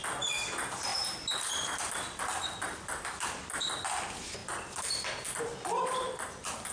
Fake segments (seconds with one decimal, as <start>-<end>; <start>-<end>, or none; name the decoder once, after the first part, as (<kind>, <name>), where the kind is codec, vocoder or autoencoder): 0.9-1.5 (vocoder, BigVGAN v2)